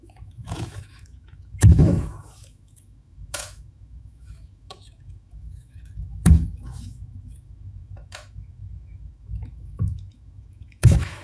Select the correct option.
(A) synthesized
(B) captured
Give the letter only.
A